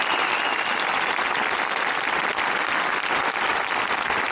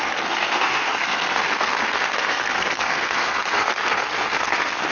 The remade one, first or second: second